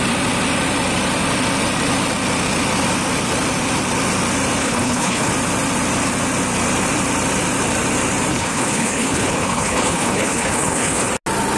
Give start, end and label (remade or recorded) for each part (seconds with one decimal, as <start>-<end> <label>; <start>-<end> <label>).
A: 0.0-4.6 recorded; 4.6-5.3 remade; 5.3-8.3 recorded; 8.3-11.1 remade; 11.1-11.6 recorded